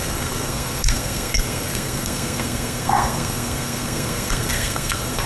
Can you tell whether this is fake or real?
fake